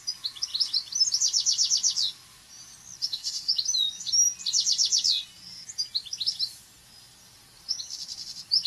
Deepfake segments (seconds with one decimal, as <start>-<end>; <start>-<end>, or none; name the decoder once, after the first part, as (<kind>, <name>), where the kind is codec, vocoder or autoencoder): 3.0-3.5 (autoencoder, DAC-VAE)